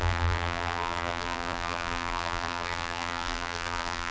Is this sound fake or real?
fake